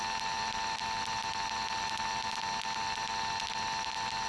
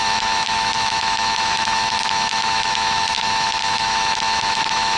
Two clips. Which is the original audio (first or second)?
first